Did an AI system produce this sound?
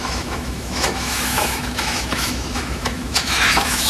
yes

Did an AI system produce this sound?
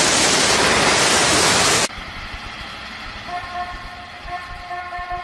no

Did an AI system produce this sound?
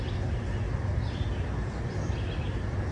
no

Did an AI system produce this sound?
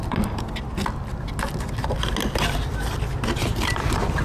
no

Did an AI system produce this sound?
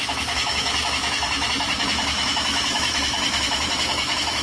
yes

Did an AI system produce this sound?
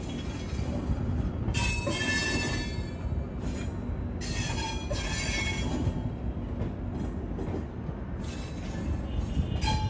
no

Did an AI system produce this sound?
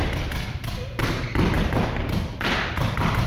no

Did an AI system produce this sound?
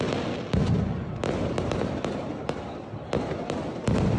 no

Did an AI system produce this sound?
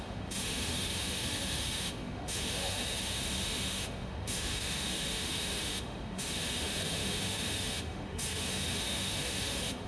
yes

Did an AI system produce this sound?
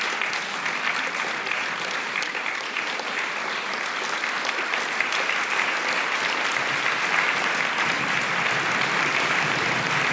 no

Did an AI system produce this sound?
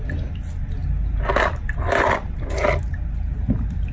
no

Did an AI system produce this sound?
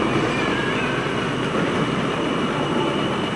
no